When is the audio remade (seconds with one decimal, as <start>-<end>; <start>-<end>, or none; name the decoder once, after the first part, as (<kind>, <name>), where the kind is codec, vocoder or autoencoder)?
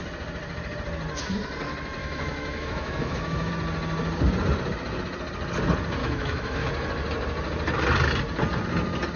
2.0-3.5 (autoencoder, DAC-VAE); 6.0-6.7